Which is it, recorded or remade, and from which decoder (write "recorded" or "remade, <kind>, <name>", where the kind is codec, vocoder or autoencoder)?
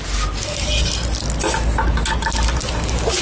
recorded